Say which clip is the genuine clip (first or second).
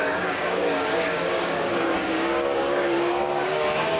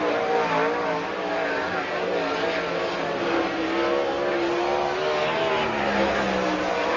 second